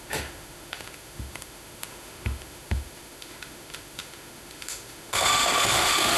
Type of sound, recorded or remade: remade